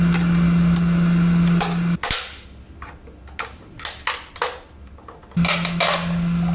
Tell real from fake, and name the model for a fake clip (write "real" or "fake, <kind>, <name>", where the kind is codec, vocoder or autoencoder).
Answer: real